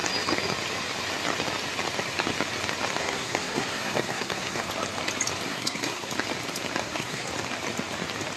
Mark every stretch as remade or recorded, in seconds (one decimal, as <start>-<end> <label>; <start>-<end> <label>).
0.0-3.0 recorded; 3.0-4.7 remade; 4.7-5.5 recorded; 5.5-6.1 remade; 6.1-6.8 recorded; 6.8-7.3 remade; 7.3-8.4 recorded